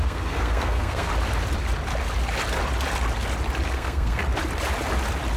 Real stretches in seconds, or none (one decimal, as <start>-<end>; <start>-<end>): 1.1-3.7; 4.2-5.4